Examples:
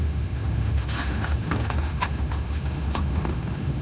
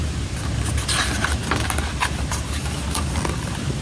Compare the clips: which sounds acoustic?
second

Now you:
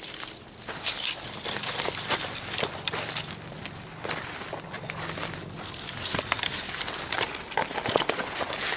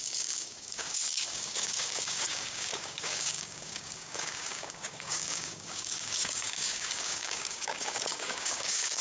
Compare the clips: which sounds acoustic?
first